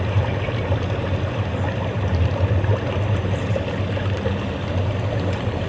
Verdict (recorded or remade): recorded